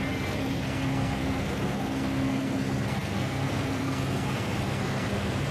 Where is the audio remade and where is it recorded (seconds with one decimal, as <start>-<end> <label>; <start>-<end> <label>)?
0.0-5.5 remade